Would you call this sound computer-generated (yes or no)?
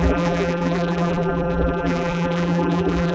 yes